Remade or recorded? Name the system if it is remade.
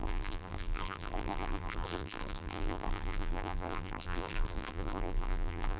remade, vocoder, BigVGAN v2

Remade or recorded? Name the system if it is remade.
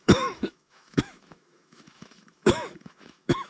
remade, autoencoder, DAC-VAE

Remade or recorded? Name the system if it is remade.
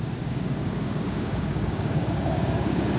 remade, codec, DAC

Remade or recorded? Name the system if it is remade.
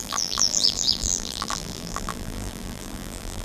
remade, vocoder, BigVGAN v2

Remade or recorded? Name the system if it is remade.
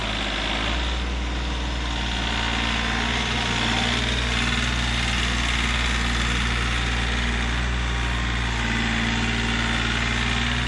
recorded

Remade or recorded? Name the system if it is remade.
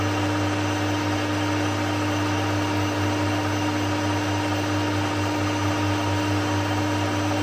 recorded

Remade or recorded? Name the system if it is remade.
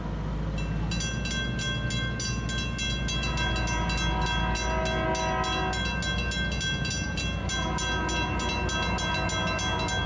recorded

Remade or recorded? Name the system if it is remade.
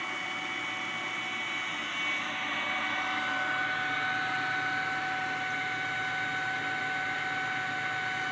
recorded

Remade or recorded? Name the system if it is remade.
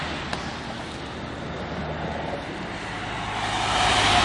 recorded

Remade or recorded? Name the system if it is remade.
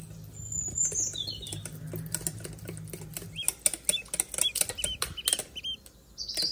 recorded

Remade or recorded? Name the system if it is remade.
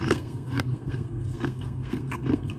remade, codec, SNAC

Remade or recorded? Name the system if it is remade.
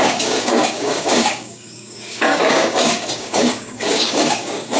remade, codec, DAC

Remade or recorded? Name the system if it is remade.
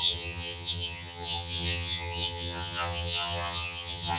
remade, vocoder, HiFi-GAN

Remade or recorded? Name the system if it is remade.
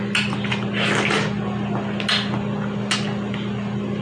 recorded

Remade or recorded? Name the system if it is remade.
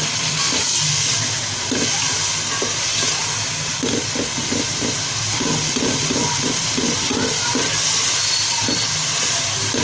recorded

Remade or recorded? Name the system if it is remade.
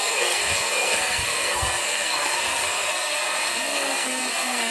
remade, codec, SNAC